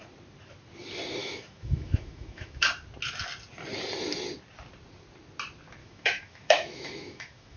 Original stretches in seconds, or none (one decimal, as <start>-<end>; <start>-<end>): 0.0-1.2; 2.7-5.8